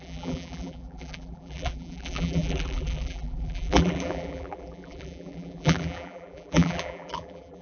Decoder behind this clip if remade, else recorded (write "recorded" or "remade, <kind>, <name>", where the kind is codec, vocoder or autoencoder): remade, vocoder, BigVGAN v2